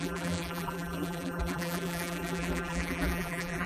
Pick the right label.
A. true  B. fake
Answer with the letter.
B